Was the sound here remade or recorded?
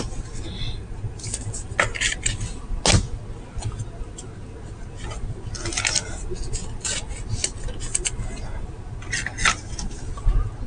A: recorded